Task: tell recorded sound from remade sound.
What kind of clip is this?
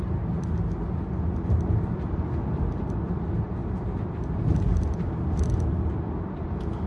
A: recorded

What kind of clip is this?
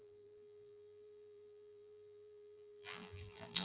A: remade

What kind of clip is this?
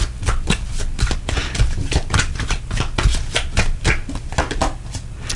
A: recorded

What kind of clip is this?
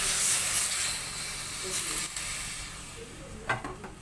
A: recorded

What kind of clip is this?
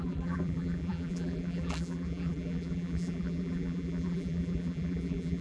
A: remade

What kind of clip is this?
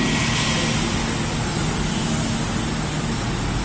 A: recorded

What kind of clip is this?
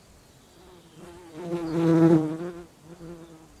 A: recorded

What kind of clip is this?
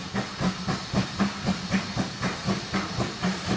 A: recorded